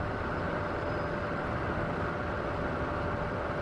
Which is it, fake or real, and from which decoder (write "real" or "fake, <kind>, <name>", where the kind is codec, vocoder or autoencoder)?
fake, vocoder, BigVGAN v2